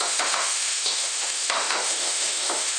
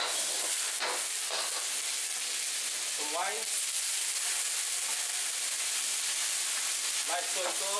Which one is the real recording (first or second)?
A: second